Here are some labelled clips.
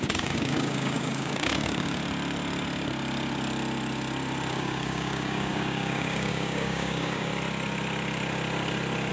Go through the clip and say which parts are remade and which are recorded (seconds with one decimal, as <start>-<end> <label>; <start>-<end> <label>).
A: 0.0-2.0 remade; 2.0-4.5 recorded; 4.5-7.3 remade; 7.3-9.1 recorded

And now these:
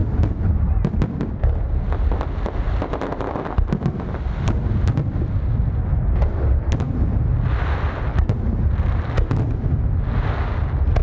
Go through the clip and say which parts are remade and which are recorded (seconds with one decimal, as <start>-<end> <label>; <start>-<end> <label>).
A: 0.0-11.0 recorded

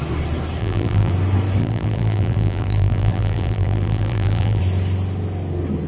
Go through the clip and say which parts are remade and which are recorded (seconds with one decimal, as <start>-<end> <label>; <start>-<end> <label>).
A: 0.0-0.6 recorded; 0.6-1.1 remade; 1.1-1.6 recorded; 1.6-4.6 remade; 4.6-5.9 recorded

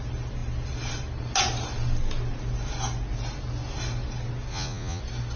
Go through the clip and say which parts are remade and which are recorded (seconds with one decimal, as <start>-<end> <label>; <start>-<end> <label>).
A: 0.0-4.5 recorded; 4.5-5.0 remade; 5.0-5.4 recorded

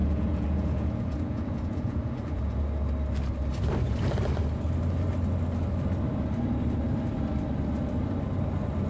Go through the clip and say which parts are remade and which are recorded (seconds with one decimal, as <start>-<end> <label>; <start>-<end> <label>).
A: 0.0-2.6 remade; 2.6-8.9 recorded

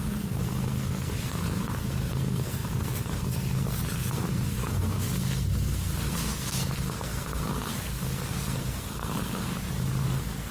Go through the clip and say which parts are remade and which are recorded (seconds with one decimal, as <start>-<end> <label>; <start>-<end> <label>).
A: 0.0-9.5 remade; 9.5-10.0 recorded; 10.0-10.5 remade